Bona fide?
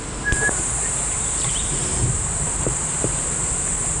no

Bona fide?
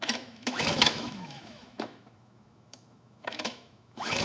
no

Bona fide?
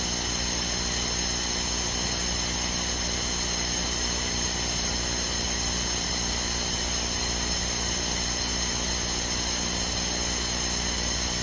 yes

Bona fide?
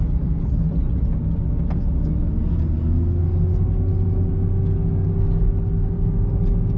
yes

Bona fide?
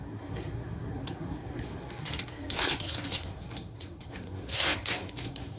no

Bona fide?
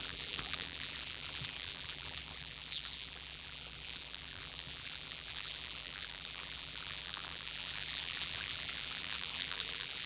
no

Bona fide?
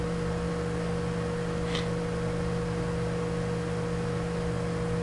yes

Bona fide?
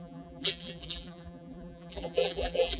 no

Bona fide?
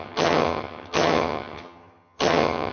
no